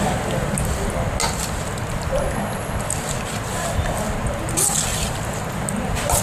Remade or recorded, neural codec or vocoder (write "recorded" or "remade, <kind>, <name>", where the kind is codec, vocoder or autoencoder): recorded